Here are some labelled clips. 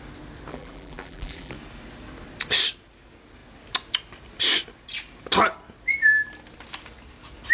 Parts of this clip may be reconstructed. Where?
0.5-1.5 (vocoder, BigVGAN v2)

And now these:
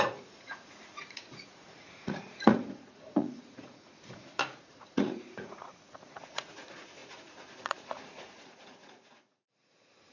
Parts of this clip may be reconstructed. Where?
0.0-10.1 (vocoder, Vocos)

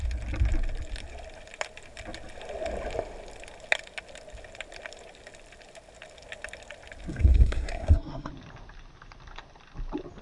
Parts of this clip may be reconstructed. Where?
7.1-8.3 (codec, SNAC)

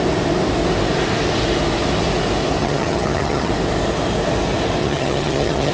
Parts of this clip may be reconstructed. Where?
2.6-3.5 (vocoder, HiFi-GAN); 4.8-5.7

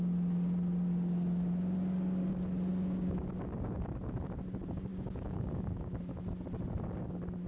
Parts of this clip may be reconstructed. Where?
2.7-3.3 (codec, DAC); 4.9-6.0

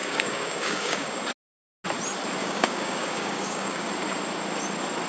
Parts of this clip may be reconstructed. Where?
0.0-1.2 (codec, DAC); 2.4-3.9

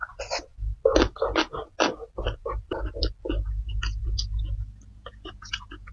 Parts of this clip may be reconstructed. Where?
4.9-5.9 (vocoder, Vocos)

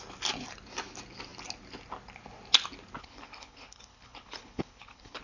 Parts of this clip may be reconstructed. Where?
3.0-5.2 (codec, HILCodec)